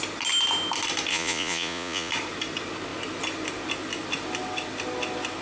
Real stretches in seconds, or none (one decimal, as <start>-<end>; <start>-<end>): 0.0-1.1; 2.1-5.4